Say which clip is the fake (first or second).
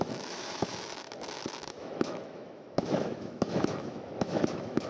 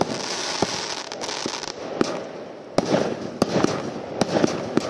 first